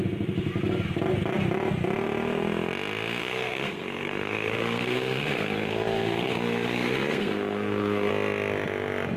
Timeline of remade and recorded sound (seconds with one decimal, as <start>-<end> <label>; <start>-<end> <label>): 0.0-3.2 recorded; 3.2-8.1 remade; 8.1-9.2 recorded